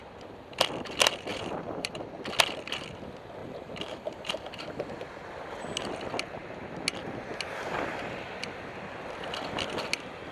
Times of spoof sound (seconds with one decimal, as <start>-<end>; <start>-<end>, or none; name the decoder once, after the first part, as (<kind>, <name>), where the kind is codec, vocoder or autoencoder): 1.3-2.0 (vocoder, BigVGAN v2); 3.4-4.5